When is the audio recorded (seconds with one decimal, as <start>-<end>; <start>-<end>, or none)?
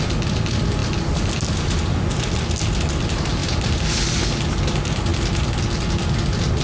0.0-6.6